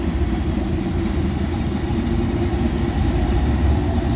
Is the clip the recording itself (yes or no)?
yes